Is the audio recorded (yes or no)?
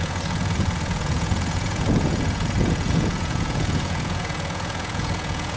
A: no